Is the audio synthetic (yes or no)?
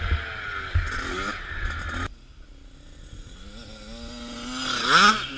no